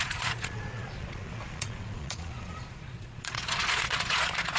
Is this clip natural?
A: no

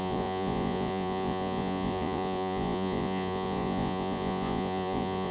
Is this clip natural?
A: no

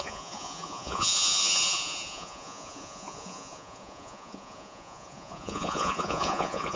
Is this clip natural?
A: no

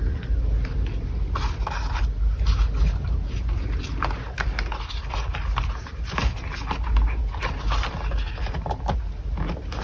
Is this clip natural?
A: yes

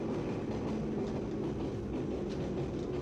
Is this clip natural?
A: yes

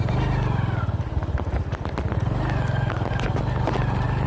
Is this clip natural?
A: yes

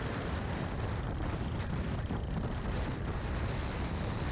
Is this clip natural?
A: yes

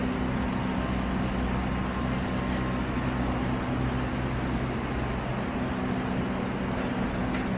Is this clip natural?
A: yes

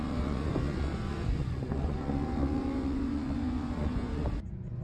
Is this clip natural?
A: no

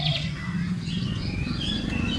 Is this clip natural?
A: no